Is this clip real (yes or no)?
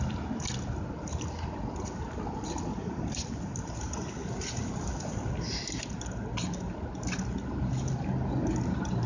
yes